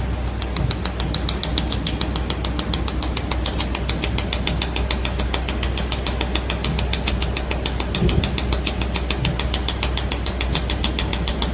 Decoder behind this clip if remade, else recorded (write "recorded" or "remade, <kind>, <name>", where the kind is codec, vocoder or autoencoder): recorded